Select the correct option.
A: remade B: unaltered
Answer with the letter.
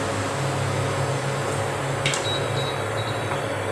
B